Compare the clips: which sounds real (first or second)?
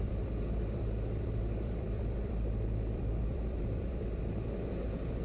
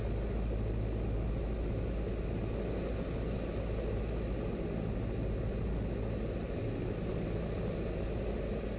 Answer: second